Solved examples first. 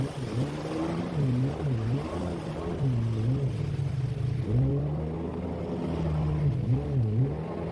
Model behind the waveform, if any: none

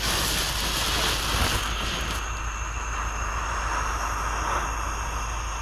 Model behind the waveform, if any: none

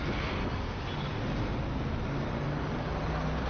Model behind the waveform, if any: none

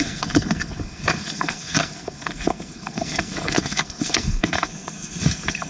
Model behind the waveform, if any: codec, SNAC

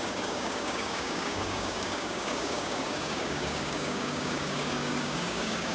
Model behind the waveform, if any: codec, DAC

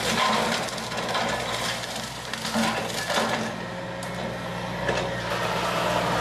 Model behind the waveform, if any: none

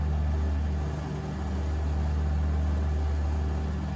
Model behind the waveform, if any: none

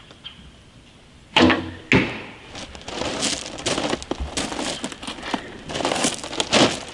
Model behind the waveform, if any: none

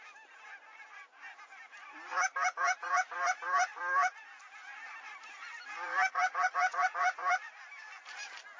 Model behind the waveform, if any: none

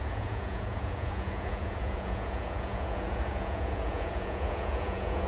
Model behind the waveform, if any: vocoder, Vocos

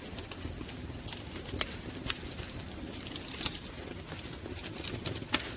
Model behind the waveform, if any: none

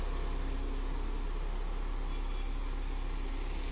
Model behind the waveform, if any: none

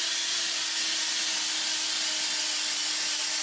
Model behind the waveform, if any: none